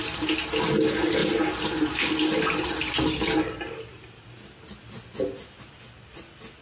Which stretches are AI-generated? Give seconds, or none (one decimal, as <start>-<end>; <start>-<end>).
none